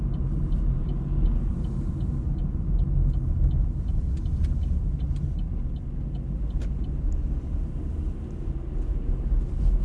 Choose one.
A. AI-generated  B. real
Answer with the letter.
B